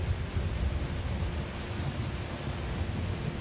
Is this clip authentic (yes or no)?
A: yes